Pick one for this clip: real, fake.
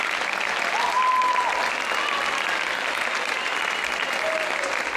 real